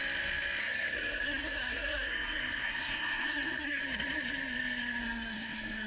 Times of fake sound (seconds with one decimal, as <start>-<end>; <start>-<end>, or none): 0.6-3.8; 5.0-5.9